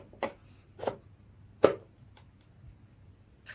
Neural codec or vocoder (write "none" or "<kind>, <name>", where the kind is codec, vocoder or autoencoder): none